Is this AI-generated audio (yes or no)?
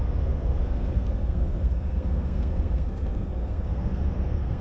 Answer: yes